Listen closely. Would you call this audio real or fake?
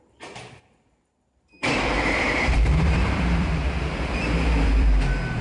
fake